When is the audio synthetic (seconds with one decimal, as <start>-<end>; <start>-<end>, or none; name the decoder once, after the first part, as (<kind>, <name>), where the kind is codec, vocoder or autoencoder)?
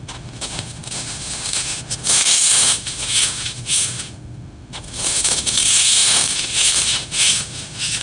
0.0-8.0 (autoencoder, DAC-VAE)